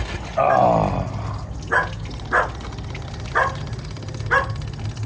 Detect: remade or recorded recorded